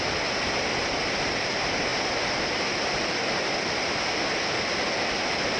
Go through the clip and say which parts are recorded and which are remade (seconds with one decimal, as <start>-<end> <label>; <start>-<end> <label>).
0.0-5.6 recorded

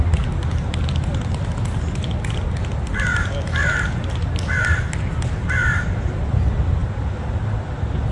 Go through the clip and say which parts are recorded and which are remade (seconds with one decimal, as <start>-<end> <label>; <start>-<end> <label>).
0.0-8.1 recorded